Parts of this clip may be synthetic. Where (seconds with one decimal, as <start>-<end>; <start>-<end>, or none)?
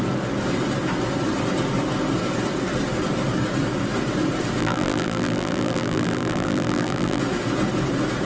4.6-7.2